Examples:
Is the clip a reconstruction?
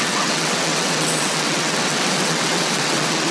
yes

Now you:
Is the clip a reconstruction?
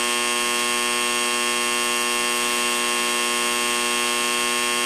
no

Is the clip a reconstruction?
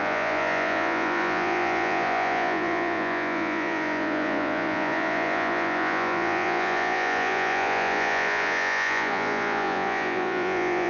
yes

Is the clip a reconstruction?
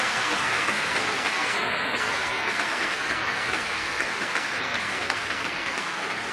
yes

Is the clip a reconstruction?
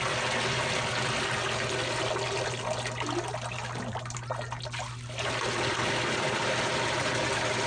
no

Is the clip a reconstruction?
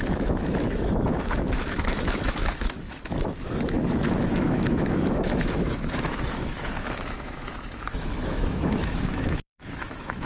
yes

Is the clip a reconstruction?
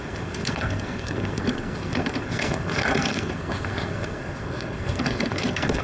yes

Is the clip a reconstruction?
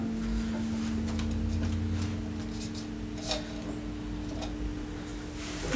no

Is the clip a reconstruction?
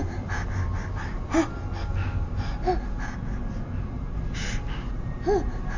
no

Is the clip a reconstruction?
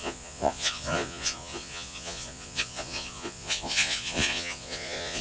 yes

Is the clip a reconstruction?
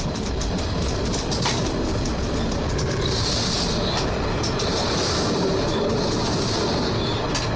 yes